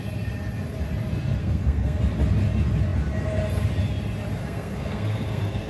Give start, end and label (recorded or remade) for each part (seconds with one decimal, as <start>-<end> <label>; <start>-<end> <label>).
0.0-1.4 recorded; 1.4-2.0 remade; 2.0-4.4 recorded; 4.4-5.7 remade